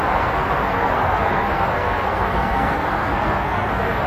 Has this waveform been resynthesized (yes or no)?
yes